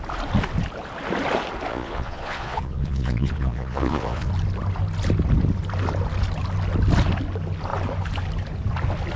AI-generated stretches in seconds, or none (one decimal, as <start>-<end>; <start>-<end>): 1.7-4.3

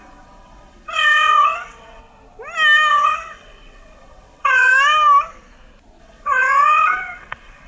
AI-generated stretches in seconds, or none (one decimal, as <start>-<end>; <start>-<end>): 0.0-2.0; 2.9-4.7; 6.0-7.7

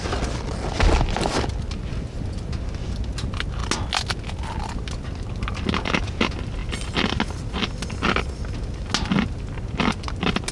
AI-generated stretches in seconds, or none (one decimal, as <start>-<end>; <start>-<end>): none

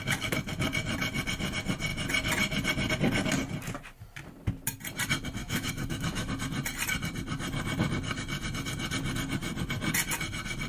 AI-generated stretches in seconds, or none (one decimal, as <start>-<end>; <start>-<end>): 5.4-6.3

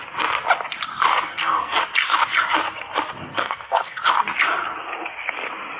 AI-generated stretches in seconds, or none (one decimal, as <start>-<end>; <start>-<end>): 1.1-1.8; 3.3-4.0

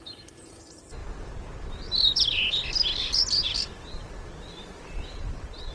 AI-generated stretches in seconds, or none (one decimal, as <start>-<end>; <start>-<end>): none

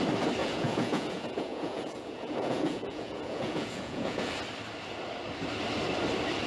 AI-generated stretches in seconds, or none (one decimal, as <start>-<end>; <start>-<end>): 0.4-4.3

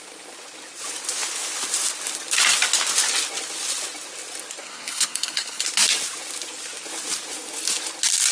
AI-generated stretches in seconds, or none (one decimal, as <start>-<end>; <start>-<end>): 4.6-5.6